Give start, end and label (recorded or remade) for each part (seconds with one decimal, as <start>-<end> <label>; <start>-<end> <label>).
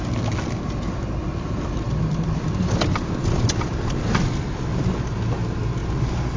0.0-1.2 recorded; 1.2-3.8 remade; 3.8-6.4 recorded